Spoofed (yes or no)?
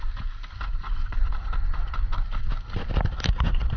no